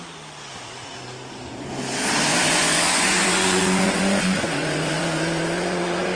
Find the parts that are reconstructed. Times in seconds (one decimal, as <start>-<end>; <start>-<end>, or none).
2.3-6.2